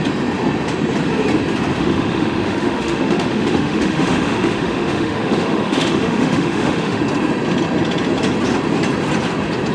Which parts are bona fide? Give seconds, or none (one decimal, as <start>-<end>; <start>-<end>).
0.0-1.8; 7.0-9.7

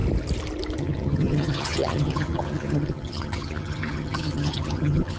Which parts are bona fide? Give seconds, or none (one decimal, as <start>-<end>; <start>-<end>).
0.0-0.8

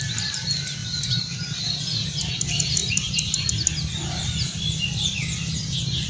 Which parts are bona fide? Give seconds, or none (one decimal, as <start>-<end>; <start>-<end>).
0.0-0.8; 1.6-6.1

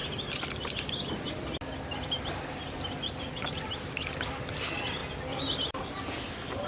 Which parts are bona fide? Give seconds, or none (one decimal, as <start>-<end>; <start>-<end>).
0.0-6.7